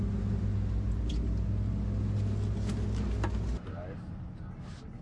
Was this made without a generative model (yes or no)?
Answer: yes